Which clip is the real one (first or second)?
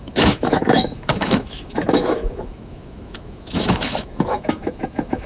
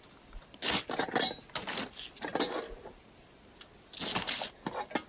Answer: second